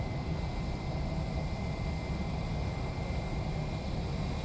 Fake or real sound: real